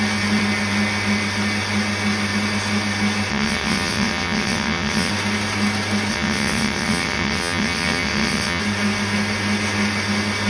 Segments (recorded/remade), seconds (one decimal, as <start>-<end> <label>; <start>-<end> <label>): 0.0-3.3 recorded; 3.3-5.1 remade; 5.1-6.1 recorded; 6.1-8.6 remade; 8.6-10.5 recorded

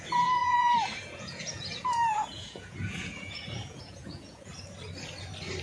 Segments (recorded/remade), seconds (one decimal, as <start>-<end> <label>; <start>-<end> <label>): 0.0-4.5 remade; 4.5-5.6 recorded